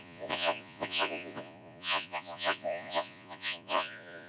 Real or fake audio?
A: fake